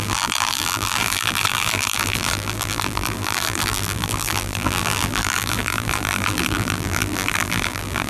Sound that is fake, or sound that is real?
fake